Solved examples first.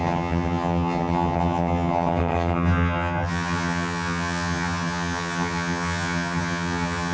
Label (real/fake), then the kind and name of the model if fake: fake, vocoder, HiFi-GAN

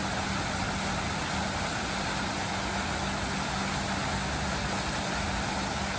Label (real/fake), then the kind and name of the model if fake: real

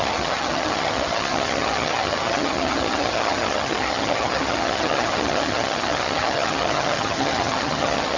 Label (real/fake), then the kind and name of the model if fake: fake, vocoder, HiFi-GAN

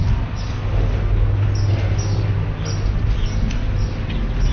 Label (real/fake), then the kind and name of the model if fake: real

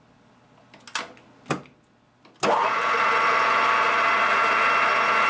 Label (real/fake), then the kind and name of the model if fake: real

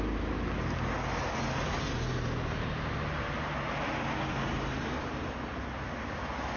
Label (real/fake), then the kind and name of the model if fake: real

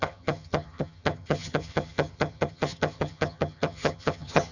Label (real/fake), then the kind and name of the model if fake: fake, vocoder, HiFi-GAN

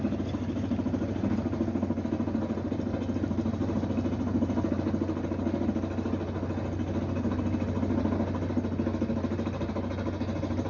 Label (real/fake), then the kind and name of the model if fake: real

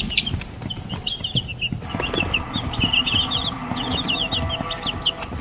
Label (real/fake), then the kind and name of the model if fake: real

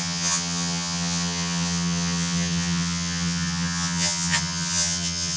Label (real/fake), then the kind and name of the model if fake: fake, vocoder, HiFi-GAN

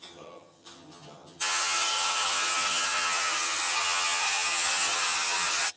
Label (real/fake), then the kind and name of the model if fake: fake, vocoder, HiFi-GAN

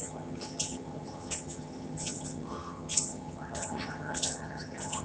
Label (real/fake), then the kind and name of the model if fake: fake, vocoder, HiFi-GAN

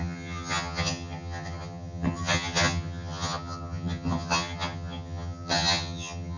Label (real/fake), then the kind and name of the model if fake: fake, vocoder, HiFi-GAN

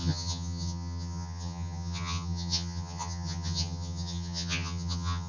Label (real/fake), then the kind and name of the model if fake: fake, vocoder, HiFi-GAN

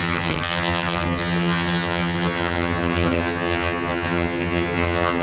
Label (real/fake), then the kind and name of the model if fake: fake, vocoder, HiFi-GAN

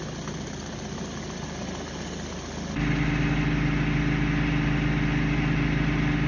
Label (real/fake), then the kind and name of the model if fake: real